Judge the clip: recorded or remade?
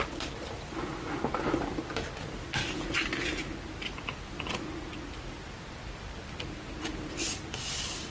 recorded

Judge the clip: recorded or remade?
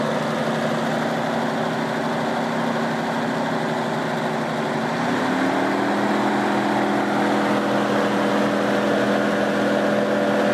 recorded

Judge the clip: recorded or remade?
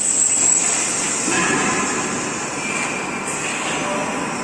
recorded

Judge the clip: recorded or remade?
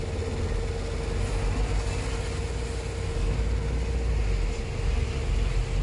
recorded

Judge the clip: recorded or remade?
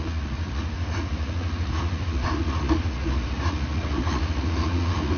remade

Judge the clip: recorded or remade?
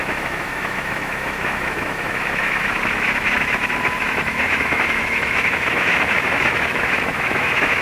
remade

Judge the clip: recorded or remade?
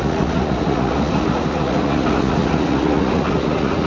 remade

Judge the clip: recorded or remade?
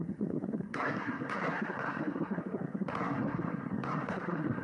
remade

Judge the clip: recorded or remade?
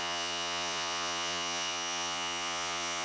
remade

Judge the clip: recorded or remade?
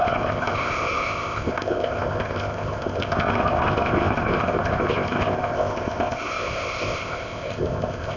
remade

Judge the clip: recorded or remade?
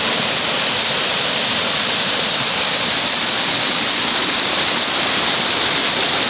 remade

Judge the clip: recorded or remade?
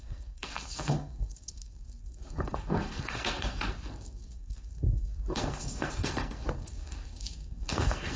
remade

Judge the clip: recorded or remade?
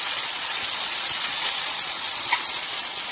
remade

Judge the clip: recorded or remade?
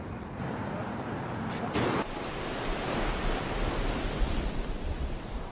recorded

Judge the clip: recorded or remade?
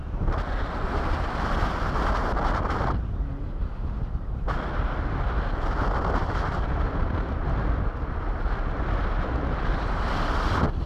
recorded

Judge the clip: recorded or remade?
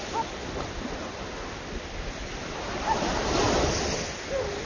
recorded